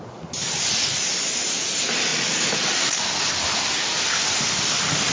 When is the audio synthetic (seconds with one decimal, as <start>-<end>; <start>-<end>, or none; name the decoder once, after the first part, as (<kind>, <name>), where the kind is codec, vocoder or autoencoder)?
none